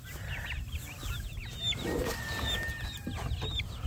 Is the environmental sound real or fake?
real